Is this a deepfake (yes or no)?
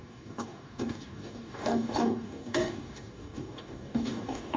yes